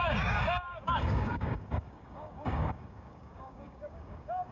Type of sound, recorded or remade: remade